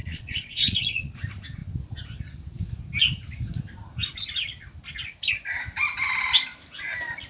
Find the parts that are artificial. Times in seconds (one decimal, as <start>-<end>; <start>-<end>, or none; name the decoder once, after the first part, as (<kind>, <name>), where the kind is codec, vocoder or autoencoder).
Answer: 0.0-1.1 (vocoder, Vocos)